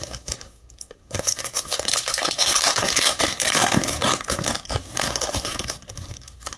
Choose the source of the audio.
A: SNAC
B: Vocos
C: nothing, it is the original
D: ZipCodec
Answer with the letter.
A